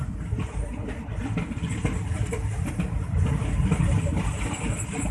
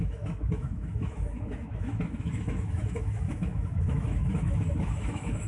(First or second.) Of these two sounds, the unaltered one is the first